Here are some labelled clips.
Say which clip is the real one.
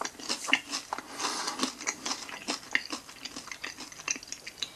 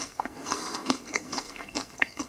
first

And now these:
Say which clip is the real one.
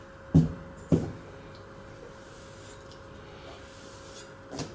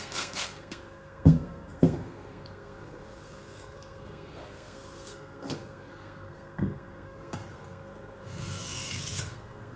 first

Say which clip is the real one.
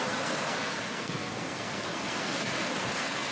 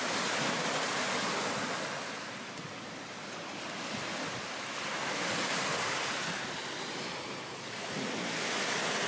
second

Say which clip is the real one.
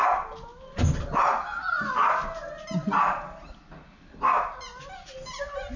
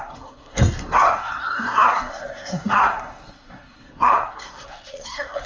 first